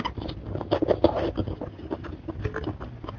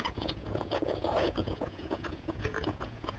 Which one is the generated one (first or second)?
second